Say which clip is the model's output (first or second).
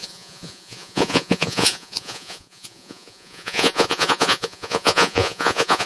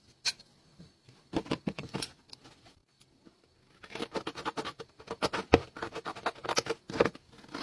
first